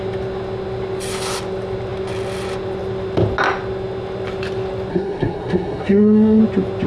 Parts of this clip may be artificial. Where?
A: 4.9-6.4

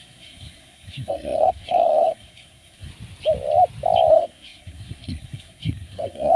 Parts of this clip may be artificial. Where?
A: 0.0-2.9; 4.1-6.4

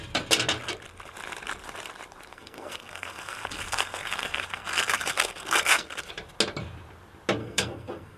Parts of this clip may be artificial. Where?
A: 2.3-6.1; 7.4-8.2

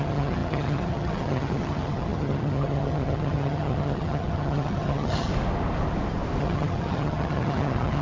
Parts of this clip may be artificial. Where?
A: 0.0-5.3; 6.4-8.0

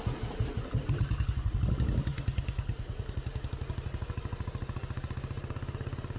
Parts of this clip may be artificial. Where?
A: none

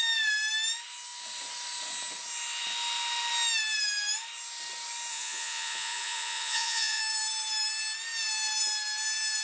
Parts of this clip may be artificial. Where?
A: 5.1-7.0

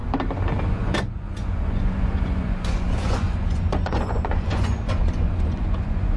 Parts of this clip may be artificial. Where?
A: 0.7-6.2

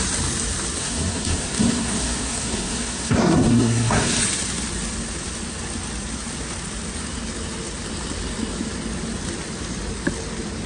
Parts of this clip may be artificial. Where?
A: 0.8-4.2